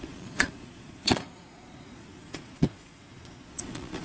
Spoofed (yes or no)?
yes